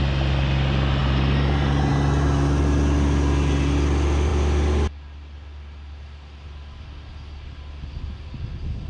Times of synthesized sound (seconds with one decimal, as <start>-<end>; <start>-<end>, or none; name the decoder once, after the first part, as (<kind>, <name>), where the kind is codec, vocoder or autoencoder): none